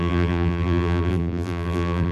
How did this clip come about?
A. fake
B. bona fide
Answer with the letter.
A